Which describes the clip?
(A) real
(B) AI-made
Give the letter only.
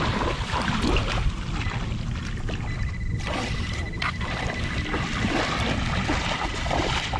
A